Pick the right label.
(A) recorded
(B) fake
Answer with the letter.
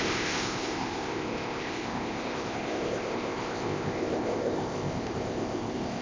B